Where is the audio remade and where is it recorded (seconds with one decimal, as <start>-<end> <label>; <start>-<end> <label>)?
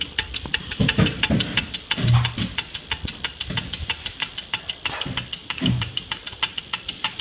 0.0-5.4 recorded; 5.4-6.1 remade; 6.1-7.2 recorded